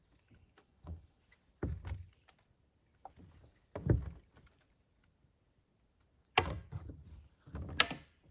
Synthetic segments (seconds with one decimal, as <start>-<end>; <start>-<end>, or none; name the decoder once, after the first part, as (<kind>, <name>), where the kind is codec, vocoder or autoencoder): 0.4-1.2 (vocoder, Vocos)